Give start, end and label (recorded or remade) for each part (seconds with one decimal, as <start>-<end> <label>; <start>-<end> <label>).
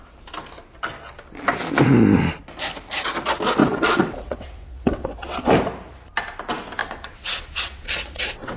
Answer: 0.0-3.6 recorded; 3.6-5.5 remade; 5.5-6.8 recorded; 6.8-8.6 remade